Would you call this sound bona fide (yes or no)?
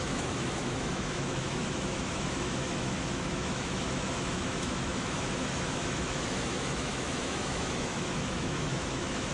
no